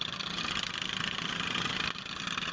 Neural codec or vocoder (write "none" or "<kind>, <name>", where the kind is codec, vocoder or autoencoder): none